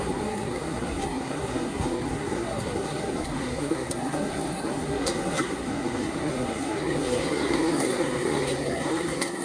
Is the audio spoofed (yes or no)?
yes